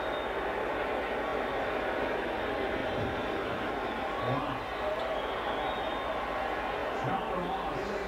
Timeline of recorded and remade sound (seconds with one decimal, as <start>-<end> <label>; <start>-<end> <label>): 0.0-2.8 recorded; 2.8-3.9 remade; 3.9-6.8 recorded; 6.8-8.1 remade